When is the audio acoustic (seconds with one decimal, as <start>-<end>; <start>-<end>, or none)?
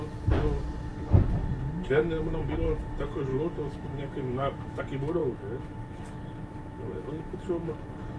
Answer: 0.0-3.3; 4.8-5.2; 7.7-8.2